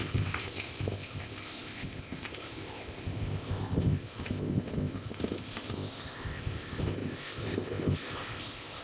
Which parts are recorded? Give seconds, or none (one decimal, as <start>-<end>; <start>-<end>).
none